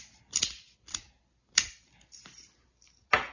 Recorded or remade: recorded